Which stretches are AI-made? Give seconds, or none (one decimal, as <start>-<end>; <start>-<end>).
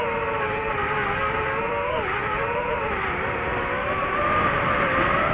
2.2-5.3